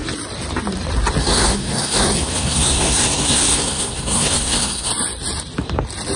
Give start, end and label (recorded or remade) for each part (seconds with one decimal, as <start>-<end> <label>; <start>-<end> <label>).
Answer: 0.0-1.2 recorded; 1.2-4.9 remade; 4.9-6.2 recorded